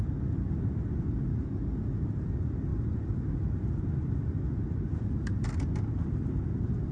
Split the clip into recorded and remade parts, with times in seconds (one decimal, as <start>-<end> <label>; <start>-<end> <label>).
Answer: 0.0-6.9 recorded